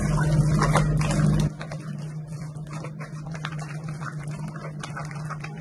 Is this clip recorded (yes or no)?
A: yes